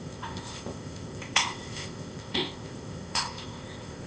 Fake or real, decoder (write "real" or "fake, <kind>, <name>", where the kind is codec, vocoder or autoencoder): fake, codec, ZipCodec